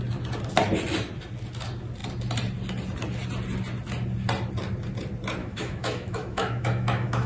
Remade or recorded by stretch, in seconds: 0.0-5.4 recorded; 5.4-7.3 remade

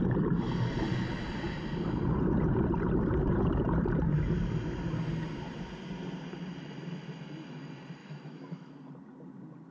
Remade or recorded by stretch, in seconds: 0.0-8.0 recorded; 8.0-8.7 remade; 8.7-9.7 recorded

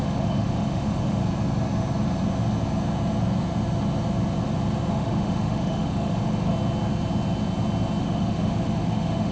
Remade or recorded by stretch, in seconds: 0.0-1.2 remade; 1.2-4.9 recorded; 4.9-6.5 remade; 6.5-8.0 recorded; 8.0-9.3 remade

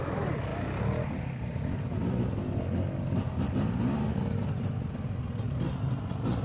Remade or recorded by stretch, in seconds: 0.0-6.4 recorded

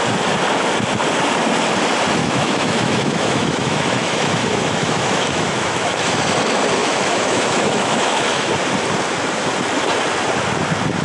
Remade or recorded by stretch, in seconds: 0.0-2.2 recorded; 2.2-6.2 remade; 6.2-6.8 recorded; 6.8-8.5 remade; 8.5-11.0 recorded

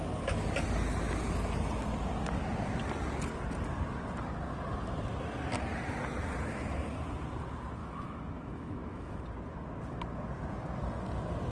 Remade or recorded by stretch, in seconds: 0.0-7.8 recorded; 7.8-9.2 remade; 9.2-11.5 recorded

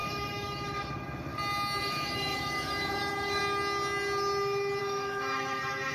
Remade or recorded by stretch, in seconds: 0.0-1.3 remade; 1.3-1.8 recorded; 1.8-3.4 remade; 3.4-4.8 recorded; 4.8-5.9 remade

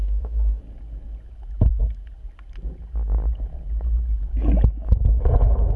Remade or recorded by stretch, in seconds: 0.0-0.6 remade; 0.6-5.8 recorded